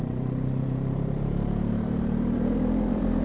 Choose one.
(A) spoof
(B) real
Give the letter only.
A